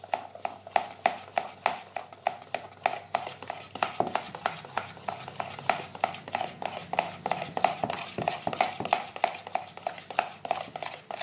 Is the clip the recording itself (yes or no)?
yes